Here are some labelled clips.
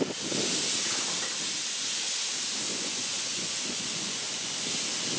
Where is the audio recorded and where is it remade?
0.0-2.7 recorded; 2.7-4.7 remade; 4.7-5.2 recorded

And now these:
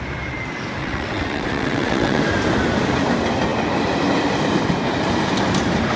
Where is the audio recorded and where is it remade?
0.0-0.8 recorded; 0.8-2.2 remade; 2.2-6.0 recorded

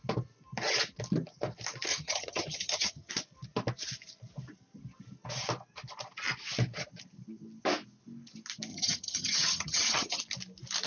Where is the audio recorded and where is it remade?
0.0-1.9 recorded; 1.9-3.1 remade; 3.1-8.7 recorded; 8.7-10.2 remade; 10.2-10.9 recorded

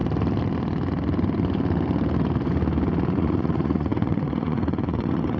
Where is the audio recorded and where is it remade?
0.0-3.2 recorded; 3.2-5.4 remade

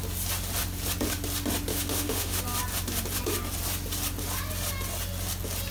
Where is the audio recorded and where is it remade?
0.0-1.7 recorded; 1.7-2.4 remade; 2.4-5.7 recorded

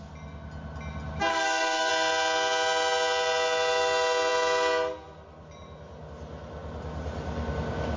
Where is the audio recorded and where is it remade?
0.0-1.3 recorded; 1.3-1.9 remade; 1.9-8.0 recorded

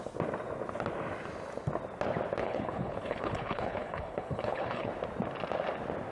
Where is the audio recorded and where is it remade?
0.0-2.4 recorded; 2.4-4.9 remade; 4.9-6.1 recorded